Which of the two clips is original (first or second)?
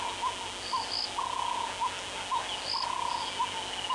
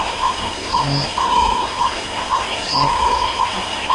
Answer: first